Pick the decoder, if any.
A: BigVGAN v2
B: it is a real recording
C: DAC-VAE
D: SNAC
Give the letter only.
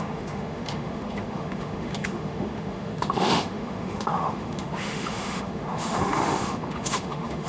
C